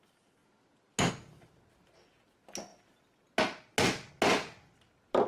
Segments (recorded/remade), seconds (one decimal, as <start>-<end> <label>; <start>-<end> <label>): 0.0-5.3 recorded